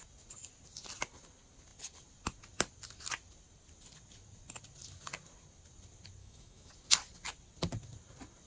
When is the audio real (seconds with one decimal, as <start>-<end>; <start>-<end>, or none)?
0.0-6.2; 6.7-8.5